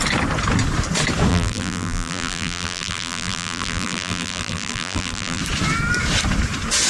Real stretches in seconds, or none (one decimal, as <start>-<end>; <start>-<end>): 0.0-1.3; 5.4-6.9